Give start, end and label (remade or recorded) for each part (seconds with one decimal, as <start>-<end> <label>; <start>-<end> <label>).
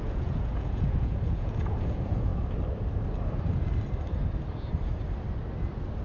0.0-2.3 remade; 2.3-6.0 recorded